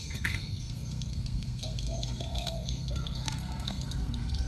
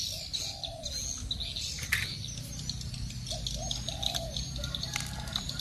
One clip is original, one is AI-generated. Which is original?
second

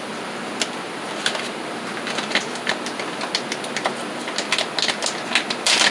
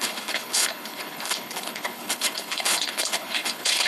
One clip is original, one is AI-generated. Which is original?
first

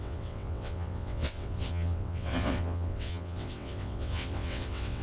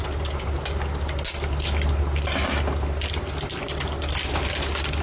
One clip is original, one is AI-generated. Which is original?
second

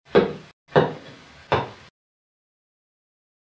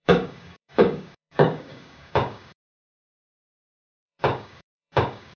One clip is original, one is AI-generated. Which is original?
first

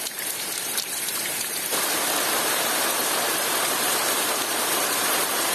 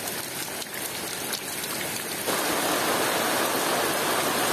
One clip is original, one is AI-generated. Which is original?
second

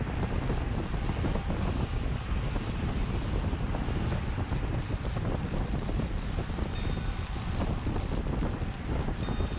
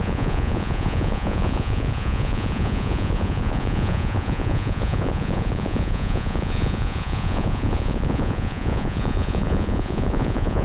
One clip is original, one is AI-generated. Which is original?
first